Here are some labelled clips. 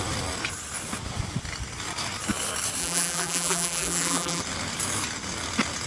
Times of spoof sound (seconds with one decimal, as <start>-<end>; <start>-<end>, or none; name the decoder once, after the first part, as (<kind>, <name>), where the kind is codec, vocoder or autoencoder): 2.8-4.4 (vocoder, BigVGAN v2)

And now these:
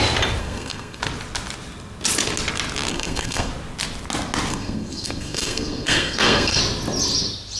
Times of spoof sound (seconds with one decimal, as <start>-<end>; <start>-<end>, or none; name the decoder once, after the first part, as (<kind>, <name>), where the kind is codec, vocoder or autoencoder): 0.4-1.0 (codec, SNAC); 2.9-3.5; 4.5-6.6

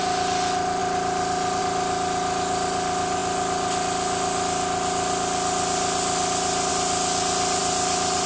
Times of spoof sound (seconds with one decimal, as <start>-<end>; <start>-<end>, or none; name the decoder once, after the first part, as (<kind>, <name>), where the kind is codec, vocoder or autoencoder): none

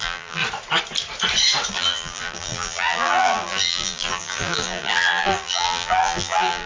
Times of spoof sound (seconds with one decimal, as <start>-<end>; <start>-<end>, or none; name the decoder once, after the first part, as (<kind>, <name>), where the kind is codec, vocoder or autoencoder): 0.0-0.4 (vocoder, BigVGAN v2); 1.7-6.7

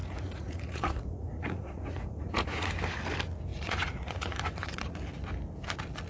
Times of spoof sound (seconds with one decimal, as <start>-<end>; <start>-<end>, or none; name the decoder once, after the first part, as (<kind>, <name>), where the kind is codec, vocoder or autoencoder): 0.0-2.7 (vocoder, Vocos); 3.5-5.0

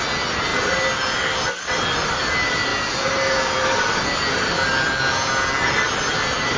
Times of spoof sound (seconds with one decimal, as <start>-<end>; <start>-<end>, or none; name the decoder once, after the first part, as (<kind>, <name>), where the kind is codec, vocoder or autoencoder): none